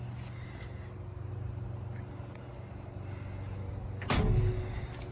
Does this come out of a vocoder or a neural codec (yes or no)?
no